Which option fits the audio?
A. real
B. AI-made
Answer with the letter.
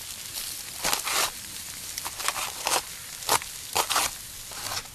B